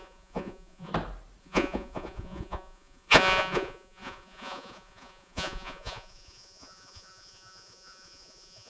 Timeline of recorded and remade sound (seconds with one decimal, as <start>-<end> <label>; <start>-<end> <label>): 0.0-0.9 remade; 0.9-1.4 recorded; 1.4-8.7 remade